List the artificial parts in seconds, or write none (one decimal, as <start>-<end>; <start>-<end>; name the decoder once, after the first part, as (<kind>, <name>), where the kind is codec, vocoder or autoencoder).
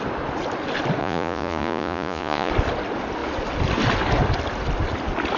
1.0-2.5 (vocoder, Vocos)